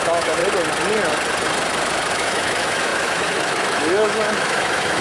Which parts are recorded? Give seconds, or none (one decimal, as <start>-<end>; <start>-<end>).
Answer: 0.4-2.1